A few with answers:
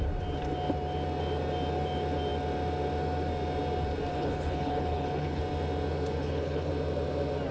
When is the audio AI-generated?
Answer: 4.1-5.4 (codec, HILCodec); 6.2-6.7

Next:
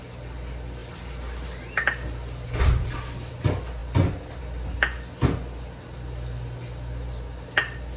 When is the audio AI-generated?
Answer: none

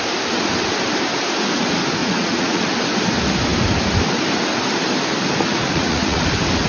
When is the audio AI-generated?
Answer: 2.0-2.6 (vocoder, Vocos); 5.5-6.2

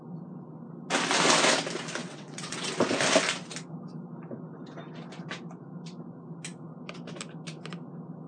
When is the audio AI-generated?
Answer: 2.0-2.7 (vocoder, WaveNeXt)

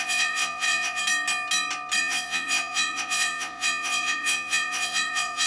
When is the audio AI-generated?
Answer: 0.0-1.0 (vocoder, Vocos); 2.0-5.5